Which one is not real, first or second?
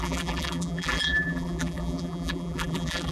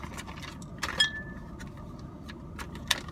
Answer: first